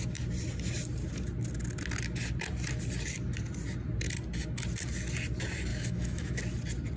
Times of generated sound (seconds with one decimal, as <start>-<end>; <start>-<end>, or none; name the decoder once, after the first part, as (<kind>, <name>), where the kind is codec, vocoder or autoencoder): 5.7-6.4 (autoencoder, DAC-VAE)